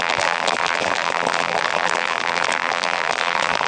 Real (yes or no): no